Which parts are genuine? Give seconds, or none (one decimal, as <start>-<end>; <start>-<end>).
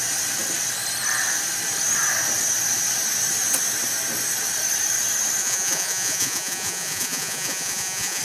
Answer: 0.0-5.4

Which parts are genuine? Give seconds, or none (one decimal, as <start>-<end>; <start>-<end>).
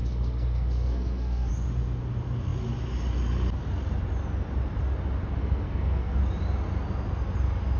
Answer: 1.5-5.4; 6.2-7.8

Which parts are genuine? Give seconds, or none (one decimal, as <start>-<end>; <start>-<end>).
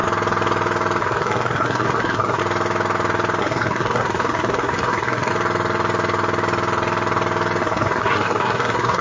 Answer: 0.0-1.0; 2.4-3.4; 5.3-7.6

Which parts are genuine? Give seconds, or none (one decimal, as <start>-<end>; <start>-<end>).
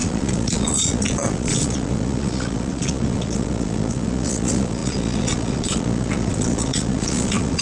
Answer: none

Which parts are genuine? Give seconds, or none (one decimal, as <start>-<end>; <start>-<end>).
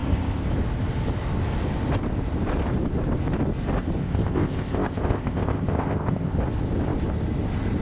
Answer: 0.5-4.0; 6.4-7.8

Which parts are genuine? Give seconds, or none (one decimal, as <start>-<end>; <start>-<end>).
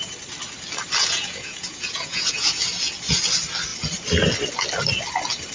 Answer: 0.0-1.0; 2.6-5.5